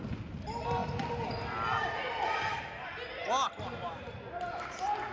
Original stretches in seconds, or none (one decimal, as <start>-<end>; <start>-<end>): 0.0-5.1